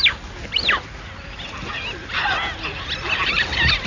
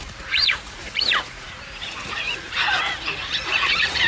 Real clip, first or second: first